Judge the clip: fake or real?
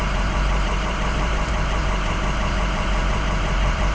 fake